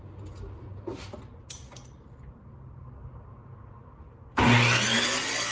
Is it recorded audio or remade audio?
recorded